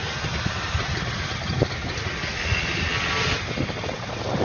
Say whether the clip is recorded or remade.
recorded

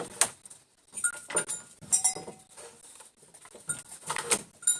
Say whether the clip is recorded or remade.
recorded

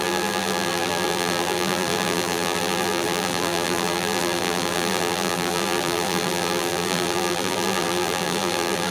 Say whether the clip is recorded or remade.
remade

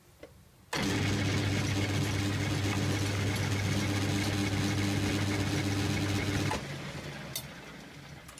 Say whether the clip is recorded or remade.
recorded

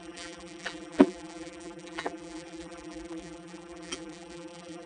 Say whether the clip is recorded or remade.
remade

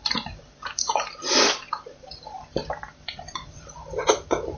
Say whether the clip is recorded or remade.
remade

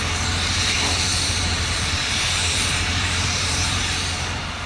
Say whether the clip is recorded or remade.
remade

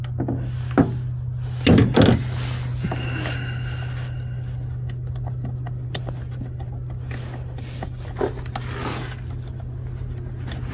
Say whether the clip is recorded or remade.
recorded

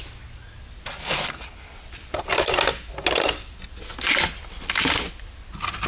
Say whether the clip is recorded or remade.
recorded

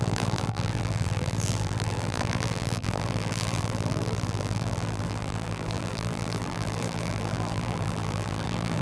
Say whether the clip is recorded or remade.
remade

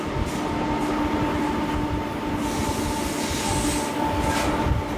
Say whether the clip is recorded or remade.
recorded